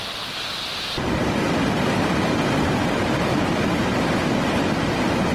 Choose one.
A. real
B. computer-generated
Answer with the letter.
B